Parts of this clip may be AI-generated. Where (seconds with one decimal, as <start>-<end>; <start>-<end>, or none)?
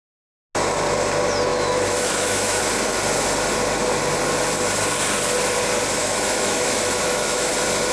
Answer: 1.5-2.6; 6.0-7.5